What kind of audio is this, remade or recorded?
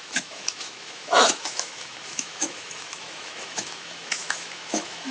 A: remade